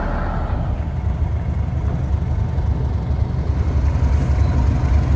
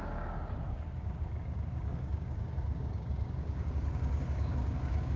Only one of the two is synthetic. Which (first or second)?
second